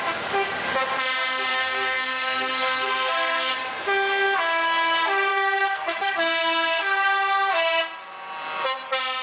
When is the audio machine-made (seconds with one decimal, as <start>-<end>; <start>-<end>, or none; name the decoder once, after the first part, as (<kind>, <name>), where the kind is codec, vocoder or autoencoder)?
1.5-3.5 (codec, SNAC); 5.3-6.8